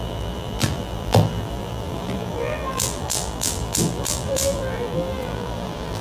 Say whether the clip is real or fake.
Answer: fake